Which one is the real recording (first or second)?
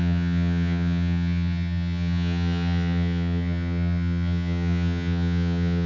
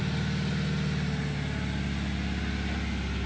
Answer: second